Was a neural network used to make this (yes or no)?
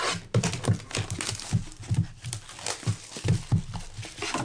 no